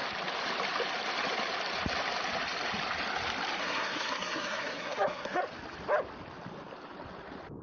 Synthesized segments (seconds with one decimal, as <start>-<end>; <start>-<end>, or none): 3.6-5.4